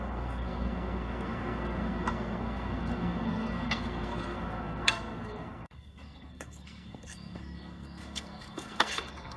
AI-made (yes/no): yes